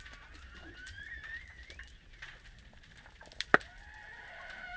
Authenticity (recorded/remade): remade